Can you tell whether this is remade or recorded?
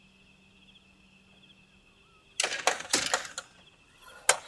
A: recorded